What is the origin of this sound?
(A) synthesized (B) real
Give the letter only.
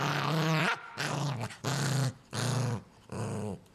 B